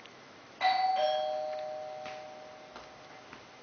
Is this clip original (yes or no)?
yes